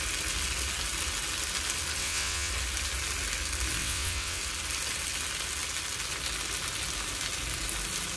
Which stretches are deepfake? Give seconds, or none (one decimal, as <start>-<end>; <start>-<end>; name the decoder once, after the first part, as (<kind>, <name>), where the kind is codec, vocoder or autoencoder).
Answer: 2.0-2.5 (vocoder, WaveNeXt); 3.8-4.4